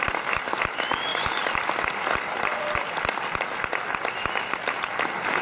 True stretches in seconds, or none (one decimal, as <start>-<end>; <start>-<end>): 0.0-5.4